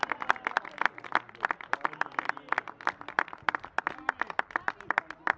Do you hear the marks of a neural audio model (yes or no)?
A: no